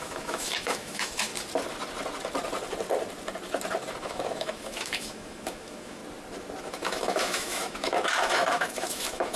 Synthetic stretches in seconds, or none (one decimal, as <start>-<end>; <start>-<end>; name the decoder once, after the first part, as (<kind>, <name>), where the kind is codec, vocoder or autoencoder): 0.0-1.3 (autoencoder, DAC-VAE); 4.0-6.0; 6.6-9.4

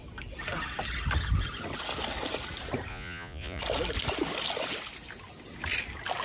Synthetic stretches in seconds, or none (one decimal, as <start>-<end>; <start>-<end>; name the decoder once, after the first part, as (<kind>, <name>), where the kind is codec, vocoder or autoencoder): 2.9-3.6 (vocoder, Vocos)